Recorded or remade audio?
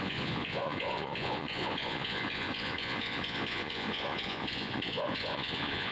remade